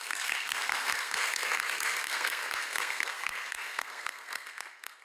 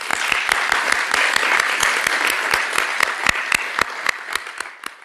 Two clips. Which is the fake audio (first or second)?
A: first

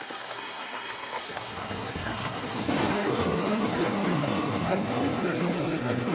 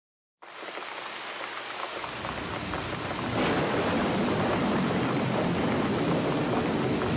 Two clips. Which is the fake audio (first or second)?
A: first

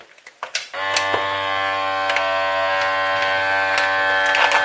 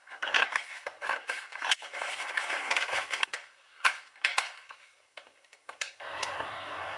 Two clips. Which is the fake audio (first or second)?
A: second